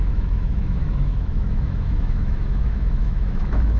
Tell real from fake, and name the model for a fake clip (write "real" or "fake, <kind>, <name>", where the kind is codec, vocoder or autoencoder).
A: fake, autoencoder, DAC-VAE